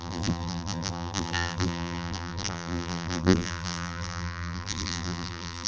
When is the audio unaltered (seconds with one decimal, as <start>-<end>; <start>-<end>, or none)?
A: none